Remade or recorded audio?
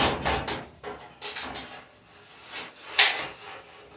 recorded